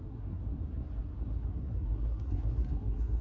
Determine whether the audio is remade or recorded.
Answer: remade